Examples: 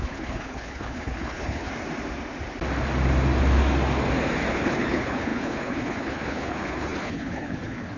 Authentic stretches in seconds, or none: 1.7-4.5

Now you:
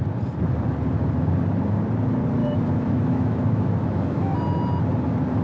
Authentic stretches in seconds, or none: 0.0-2.4; 4.4-5.4